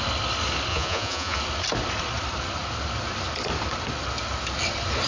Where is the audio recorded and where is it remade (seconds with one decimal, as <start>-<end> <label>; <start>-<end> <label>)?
0.0-0.7 recorded; 0.7-1.4 remade; 1.4-5.1 recorded